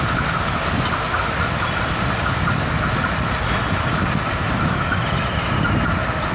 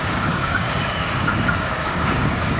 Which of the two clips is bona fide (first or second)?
first